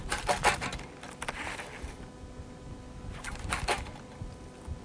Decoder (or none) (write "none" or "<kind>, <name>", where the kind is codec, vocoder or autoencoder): none